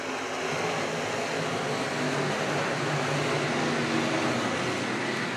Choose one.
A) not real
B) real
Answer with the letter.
B